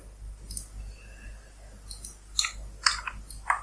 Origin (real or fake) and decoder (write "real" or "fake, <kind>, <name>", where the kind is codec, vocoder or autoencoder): real